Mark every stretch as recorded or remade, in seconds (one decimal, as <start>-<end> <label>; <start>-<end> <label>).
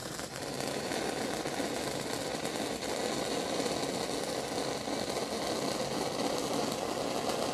0.0-0.9 remade; 0.9-7.5 recorded